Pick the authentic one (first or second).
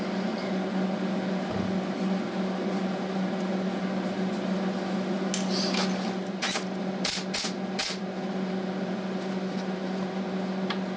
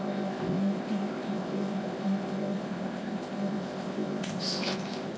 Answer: first